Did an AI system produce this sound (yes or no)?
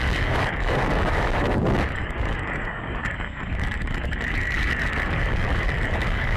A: yes